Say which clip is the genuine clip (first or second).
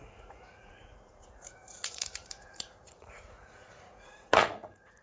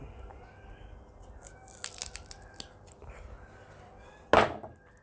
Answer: second